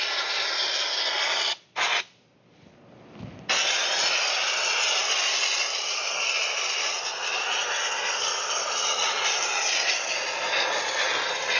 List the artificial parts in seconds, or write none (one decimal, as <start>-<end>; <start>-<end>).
none